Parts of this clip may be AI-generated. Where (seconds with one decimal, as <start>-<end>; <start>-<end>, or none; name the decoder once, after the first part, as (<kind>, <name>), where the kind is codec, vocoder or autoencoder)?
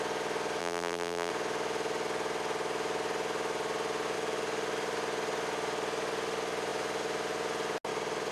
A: 0.6-1.3 (vocoder, BigVGAN v2)